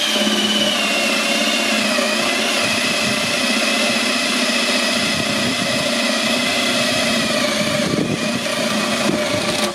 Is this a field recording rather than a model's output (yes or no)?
yes